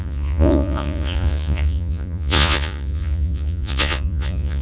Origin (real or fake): fake